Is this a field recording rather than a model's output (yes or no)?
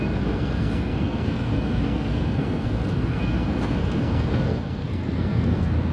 no